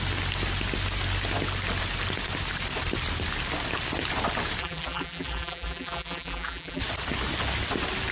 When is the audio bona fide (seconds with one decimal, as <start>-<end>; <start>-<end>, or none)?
0.0-4.6; 6.8-8.1